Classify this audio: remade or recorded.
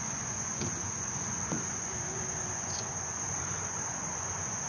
remade